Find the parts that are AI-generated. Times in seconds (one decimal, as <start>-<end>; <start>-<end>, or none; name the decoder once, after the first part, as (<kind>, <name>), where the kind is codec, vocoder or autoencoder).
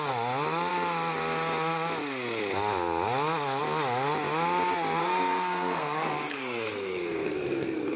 5.0-8.0 (codec, SNAC)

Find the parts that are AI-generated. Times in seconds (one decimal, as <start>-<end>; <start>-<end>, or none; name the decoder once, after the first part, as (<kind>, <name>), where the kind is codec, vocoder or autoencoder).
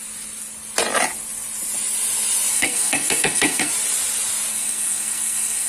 2.5-3.7 (codec, SNAC); 4.5-5.7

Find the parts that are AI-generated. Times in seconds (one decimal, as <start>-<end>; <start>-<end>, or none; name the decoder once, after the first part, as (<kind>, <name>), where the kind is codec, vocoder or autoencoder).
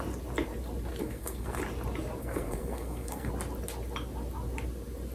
1.0-1.6 (codec, SNAC); 2.2-3.3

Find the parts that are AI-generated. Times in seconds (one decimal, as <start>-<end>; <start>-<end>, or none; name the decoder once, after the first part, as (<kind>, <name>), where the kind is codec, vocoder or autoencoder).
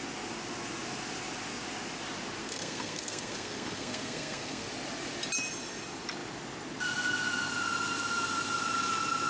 2.4-4.7 (codec, SNAC)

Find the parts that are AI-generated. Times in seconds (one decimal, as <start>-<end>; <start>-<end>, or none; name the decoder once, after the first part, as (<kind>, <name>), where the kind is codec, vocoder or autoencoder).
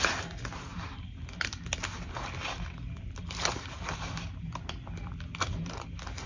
none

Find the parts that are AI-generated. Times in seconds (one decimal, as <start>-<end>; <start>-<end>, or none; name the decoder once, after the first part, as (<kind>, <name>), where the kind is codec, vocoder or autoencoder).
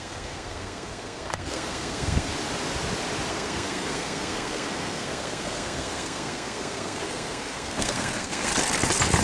0.0-2.3 (codec, SNAC); 3.3-8.5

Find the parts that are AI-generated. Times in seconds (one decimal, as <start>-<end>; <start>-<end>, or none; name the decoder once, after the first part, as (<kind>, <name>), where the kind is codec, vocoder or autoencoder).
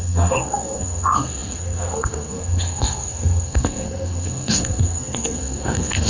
0.0-6.1 (codec, SNAC)